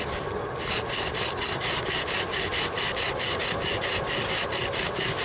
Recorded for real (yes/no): yes